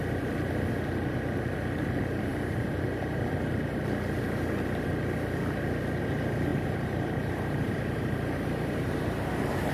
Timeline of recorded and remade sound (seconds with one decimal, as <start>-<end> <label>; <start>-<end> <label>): 0.0-2.3 recorded; 2.3-3.3 remade; 3.3-6.5 recorded; 6.5-9.7 remade